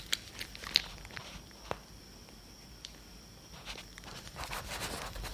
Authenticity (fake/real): fake